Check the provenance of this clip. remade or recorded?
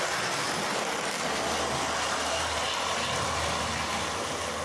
recorded